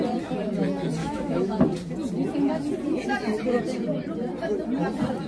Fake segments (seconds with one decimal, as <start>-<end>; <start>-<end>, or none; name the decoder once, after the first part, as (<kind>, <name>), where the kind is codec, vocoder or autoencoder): 1.0-1.6 (autoencoder, DAC-VAE)